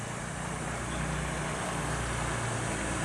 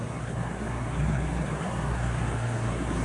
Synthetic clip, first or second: second